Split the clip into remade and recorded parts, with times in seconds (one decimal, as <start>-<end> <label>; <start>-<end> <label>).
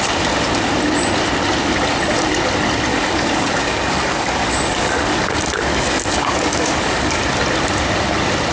0.0-2.9 recorded; 2.9-7.2 remade; 7.2-8.5 recorded